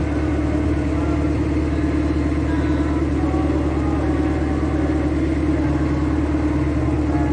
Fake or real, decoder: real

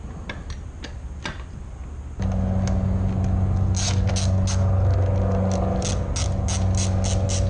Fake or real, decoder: real